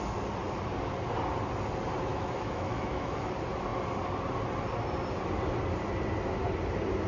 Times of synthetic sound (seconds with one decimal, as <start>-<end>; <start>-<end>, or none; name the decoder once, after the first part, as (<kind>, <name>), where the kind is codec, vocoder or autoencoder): 2.1-3.3 (autoencoder, DAC-VAE)